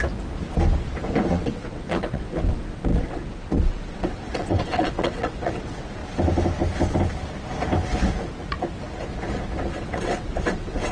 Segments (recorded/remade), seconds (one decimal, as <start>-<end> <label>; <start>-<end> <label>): 0.0-1.3 recorded; 1.3-6.0 remade; 6.0-9.8 recorded; 9.8-10.9 remade